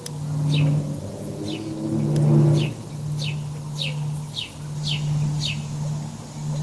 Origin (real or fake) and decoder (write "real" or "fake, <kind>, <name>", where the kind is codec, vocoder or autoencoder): real